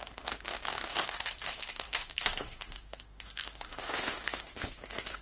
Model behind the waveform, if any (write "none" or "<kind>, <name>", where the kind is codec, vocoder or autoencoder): autoencoder, DAC-VAE